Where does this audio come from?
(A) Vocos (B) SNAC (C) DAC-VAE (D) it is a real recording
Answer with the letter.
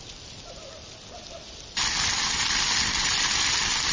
D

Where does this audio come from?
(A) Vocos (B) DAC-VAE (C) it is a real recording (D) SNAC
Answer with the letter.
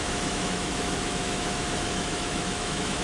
B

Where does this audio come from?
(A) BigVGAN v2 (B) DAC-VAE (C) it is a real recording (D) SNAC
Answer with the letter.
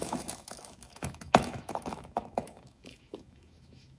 B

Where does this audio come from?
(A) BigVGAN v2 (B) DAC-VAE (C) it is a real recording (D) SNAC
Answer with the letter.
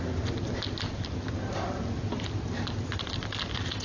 C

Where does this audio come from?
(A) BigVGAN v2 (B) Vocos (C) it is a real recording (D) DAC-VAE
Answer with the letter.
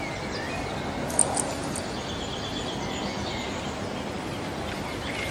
C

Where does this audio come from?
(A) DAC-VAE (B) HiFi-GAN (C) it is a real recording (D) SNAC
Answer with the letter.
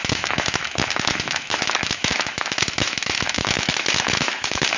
A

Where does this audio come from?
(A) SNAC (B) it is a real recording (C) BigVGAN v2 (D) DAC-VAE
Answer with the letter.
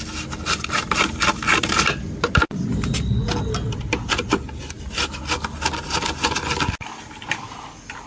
B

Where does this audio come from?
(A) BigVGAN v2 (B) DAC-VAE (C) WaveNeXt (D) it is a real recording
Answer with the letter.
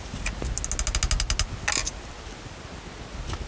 D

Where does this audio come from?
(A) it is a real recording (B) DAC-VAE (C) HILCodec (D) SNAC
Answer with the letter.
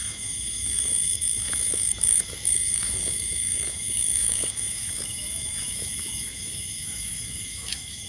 B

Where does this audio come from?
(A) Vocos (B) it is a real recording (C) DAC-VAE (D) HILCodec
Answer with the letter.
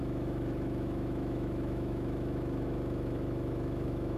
C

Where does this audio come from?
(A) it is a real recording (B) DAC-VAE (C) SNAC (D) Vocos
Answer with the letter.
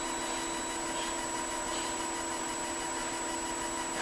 A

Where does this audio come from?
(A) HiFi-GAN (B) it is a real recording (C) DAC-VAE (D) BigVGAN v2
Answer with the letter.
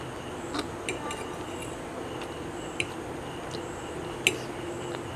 B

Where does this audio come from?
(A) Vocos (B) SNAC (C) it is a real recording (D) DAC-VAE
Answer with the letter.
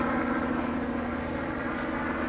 C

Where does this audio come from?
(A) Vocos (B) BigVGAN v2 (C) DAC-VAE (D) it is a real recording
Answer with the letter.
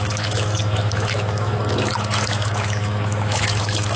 C